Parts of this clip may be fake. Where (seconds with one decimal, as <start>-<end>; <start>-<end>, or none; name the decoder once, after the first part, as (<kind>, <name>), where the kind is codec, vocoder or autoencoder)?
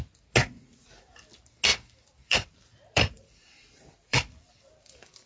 1.7-5.3 (vocoder, BigVGAN v2)